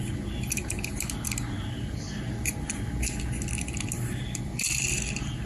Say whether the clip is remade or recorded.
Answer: recorded